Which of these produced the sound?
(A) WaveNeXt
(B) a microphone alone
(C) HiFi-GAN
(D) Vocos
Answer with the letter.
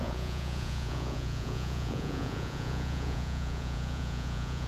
D